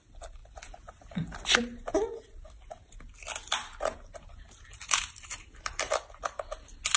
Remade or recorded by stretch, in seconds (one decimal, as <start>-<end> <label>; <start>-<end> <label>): 0.0-0.4 recorded; 0.4-1.4 remade; 1.4-4.7 recorded; 4.7-6.5 remade; 6.5-7.0 recorded